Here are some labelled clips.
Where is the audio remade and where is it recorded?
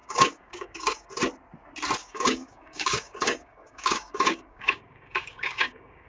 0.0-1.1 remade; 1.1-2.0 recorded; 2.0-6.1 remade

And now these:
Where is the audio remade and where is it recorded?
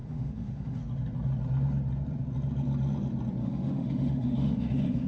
0.0-0.8 remade; 0.8-3.4 recorded; 3.4-5.1 remade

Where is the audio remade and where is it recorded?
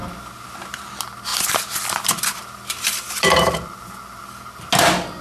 0.0-1.3 recorded; 1.3-4.4 remade; 4.4-5.2 recorded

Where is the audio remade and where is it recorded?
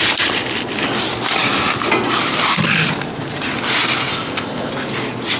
0.0-4.1 recorded; 4.1-4.7 remade; 4.7-5.4 recorded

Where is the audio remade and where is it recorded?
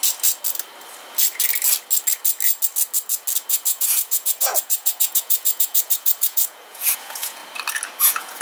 0.0-3.5 recorded; 3.5-7.4 remade; 7.4-8.0 recorded; 8.0-8.4 remade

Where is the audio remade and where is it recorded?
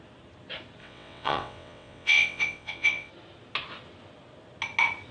0.0-0.8 recorded; 0.8-3.1 remade; 3.1-5.1 recorded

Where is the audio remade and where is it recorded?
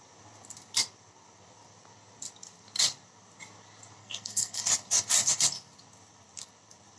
0.0-4.0 recorded; 4.0-4.6 remade; 4.6-7.0 recorded